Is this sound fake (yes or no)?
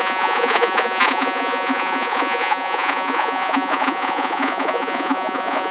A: yes